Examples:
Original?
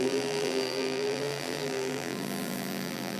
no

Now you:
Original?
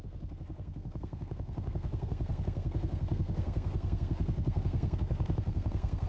no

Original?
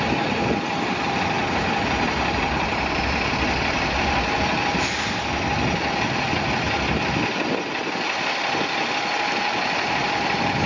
yes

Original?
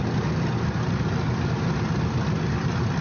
yes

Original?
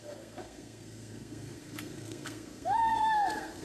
no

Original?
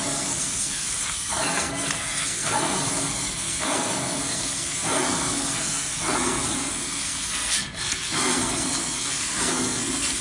no